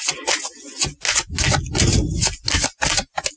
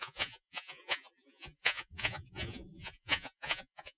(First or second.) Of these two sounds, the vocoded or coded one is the second